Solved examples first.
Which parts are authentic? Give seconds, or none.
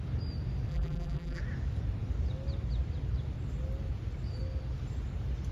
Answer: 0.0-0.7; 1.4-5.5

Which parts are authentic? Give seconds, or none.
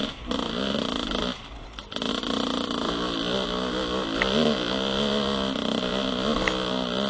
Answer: 0.0-7.1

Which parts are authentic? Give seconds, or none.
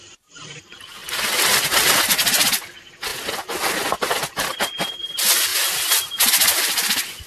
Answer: 0.0-1.0; 1.9-5.5; 6.3-7.3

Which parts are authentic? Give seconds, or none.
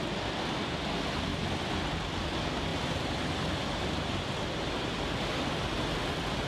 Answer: 0.0-6.5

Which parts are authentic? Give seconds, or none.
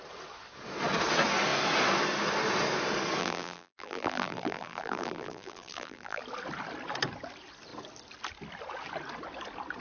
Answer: 0.0-3.2; 6.2-9.8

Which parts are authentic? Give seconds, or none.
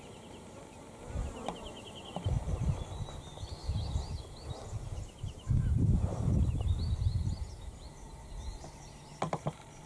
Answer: 3.6-5.2; 8.5-9.2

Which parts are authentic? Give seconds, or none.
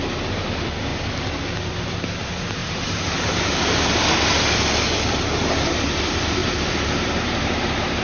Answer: 0.0-2.6; 3.5-6.4